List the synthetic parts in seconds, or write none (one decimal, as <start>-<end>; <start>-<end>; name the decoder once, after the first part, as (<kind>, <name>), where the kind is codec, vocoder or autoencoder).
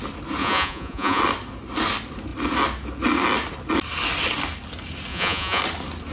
0.4-1.2 (vocoder, Vocos); 5.1-5.6